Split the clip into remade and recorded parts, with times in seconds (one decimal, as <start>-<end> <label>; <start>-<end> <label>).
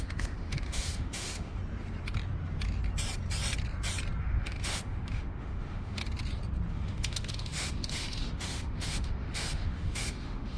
0.0-1.6 remade; 1.6-4.2 recorded; 4.2-6.0 remade; 6.0-6.7 recorded; 6.7-10.6 remade